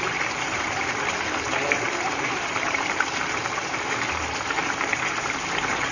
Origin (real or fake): fake